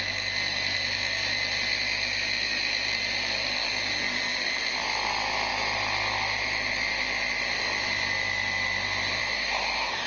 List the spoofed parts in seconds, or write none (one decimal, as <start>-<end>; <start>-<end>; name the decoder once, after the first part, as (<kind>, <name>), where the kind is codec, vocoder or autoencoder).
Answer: 0.0-5.5 (vocoder, BigVGAN v2); 9.2-10.1